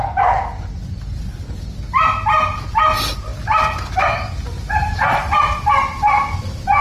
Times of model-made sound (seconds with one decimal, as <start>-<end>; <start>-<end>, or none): 4.8-5.7